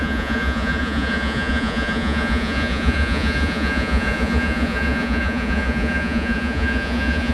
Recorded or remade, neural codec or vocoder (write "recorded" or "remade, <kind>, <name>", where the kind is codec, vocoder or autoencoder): remade, vocoder, Vocos